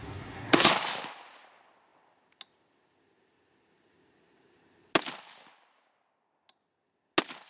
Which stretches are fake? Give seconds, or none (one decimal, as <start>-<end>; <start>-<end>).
0.0-0.7